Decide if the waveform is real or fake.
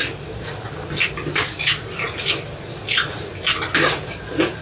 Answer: real